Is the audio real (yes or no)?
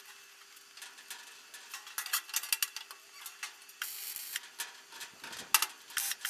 yes